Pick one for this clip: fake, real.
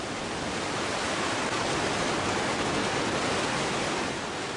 real